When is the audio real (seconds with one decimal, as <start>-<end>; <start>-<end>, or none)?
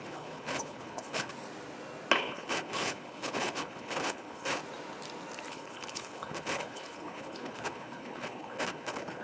1.3-2.2; 4.6-5.5